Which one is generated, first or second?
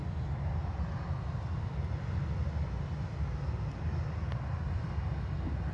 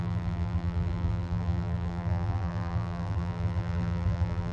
second